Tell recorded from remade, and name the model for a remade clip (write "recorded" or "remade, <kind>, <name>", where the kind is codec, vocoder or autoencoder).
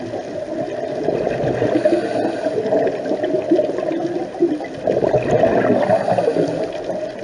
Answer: recorded